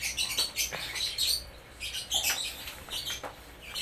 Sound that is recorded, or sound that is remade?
remade